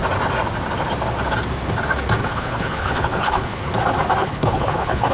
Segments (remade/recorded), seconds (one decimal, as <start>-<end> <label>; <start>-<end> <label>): 0.0-2.2 recorded; 2.2-3.7 remade; 3.7-4.2 recorded; 4.2-5.1 remade